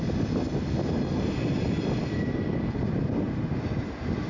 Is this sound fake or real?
real